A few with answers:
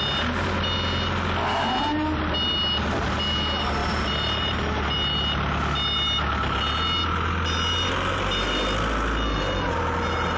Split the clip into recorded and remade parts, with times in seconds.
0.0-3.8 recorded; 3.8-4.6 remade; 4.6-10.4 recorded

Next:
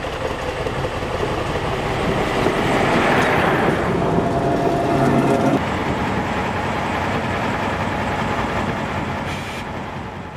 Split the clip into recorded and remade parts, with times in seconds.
0.0-5.8 recorded; 5.8-8.4 remade; 8.4-9.3 recorded; 9.3-9.8 remade; 9.8-10.4 recorded

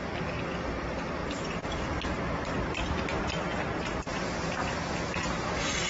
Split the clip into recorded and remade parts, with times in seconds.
0.0-1.2 recorded; 1.2-4.7 remade; 4.7-5.9 recorded

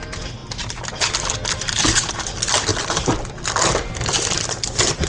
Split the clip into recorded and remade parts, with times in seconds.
0.0-0.4 remade; 0.4-2.2 recorded; 2.2-2.7 remade; 2.7-3.3 recorded; 3.3-5.1 remade

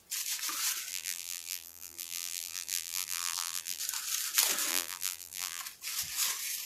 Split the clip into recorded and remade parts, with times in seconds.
0.0-0.9 recorded; 0.9-3.8 remade; 3.8-4.7 recorded; 4.7-5.6 remade; 5.6-6.6 recorded